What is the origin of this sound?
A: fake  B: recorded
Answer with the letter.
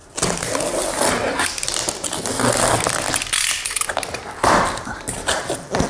B